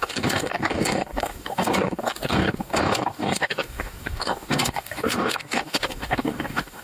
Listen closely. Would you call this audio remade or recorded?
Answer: remade